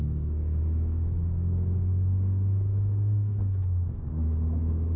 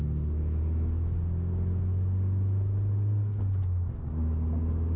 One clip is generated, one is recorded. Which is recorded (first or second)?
second